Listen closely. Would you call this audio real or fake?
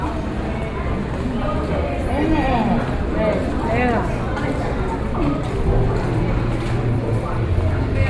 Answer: real